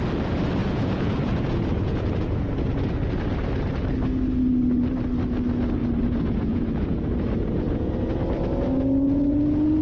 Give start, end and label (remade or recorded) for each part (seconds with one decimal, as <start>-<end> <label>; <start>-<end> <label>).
0.0-0.6 recorded; 0.6-2.8 remade; 2.8-5.8 recorded; 5.8-7.9 remade; 7.9-9.8 recorded

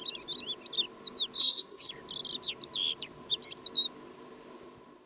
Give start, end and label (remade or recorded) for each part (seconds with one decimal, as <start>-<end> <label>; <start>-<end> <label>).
0.0-1.4 recorded; 1.4-1.9 remade; 1.9-5.1 recorded